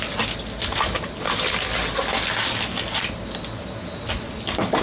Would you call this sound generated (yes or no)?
no